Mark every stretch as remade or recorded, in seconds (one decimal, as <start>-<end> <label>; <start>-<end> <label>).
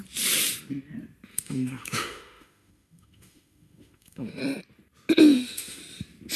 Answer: 0.0-1.3 recorded; 1.3-4.4 remade; 4.4-5.2 recorded; 5.2-5.8 remade; 5.8-6.4 recorded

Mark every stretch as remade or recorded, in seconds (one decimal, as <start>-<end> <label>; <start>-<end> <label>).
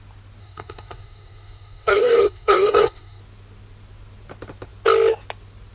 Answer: 0.0-0.4 recorded; 0.4-3.2 remade; 3.2-5.7 recorded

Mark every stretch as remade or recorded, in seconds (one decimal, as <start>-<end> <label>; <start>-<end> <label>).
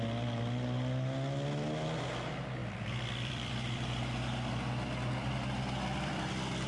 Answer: 0.0-2.6 recorded; 2.6-6.3 remade; 6.3-6.7 recorded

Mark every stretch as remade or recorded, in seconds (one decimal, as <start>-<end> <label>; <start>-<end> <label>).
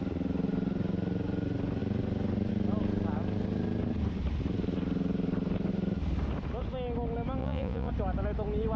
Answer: 0.0-7.4 recorded; 7.4-7.9 remade; 7.9-8.8 recorded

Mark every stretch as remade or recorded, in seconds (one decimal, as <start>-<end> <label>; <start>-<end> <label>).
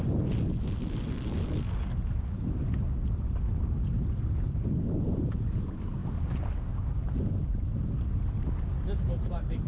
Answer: 0.0-9.7 recorded